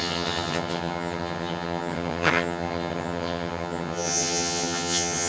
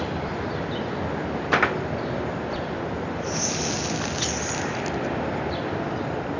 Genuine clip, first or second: second